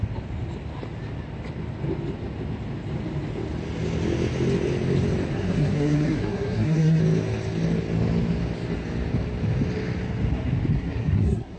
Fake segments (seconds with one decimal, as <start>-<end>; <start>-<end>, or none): 5.3-7.0; 10.7-11.6

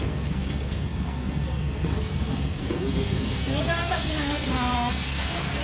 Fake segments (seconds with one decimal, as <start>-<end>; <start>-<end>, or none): 0.0-5.6

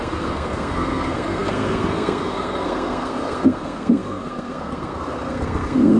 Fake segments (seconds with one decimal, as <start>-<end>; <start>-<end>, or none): 0.0-6.0